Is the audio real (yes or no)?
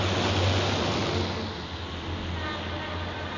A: yes